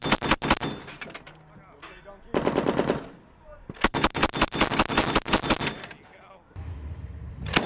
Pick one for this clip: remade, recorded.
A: recorded